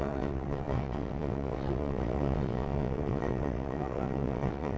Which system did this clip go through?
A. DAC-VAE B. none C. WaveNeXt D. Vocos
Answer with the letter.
C